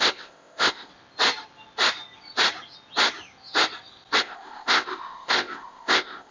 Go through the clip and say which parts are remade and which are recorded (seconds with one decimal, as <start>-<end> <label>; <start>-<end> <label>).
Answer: 0.0-0.9 remade; 0.9-4.2 recorded; 4.2-6.3 remade